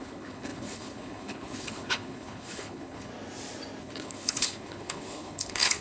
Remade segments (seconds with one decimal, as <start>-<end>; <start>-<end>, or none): 0.0-3.1; 3.8-5.8